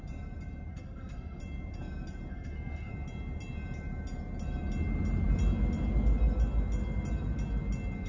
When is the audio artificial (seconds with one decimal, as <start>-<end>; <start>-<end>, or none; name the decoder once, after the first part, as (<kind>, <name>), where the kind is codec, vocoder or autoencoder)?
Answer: 0.7-1.4 (codec, SNAC); 2.3-2.9